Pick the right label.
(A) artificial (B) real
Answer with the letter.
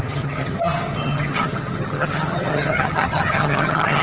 A